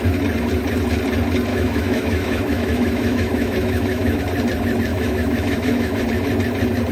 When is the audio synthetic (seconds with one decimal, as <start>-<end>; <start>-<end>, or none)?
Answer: 1.5-4.2; 4.9-6.0